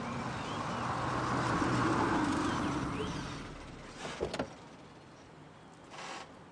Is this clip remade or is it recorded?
recorded